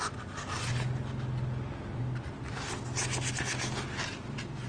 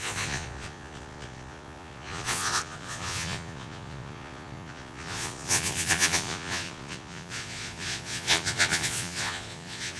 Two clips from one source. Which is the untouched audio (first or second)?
first